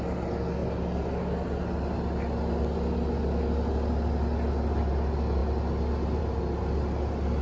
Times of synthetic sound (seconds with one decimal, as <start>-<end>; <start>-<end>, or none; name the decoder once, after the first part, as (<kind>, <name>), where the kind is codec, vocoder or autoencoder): none